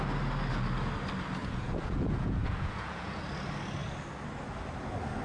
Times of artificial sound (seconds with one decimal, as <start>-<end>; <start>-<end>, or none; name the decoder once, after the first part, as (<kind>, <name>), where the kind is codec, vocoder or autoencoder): 1.4-3.2 (vocoder, Vocos)